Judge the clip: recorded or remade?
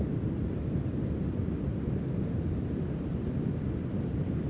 remade